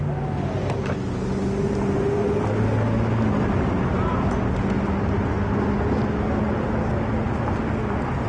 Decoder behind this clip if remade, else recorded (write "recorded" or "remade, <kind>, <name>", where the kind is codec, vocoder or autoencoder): recorded